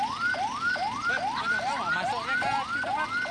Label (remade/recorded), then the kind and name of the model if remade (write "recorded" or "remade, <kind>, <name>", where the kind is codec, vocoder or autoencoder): recorded